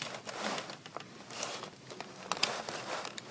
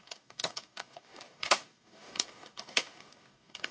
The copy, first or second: second